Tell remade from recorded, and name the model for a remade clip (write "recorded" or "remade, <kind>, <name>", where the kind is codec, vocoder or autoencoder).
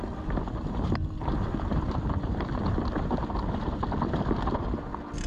recorded